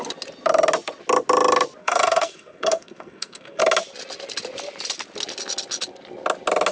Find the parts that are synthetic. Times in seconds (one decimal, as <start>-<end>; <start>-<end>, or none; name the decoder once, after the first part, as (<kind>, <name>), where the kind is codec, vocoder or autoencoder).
1.8-3.6 (codec, SNAC)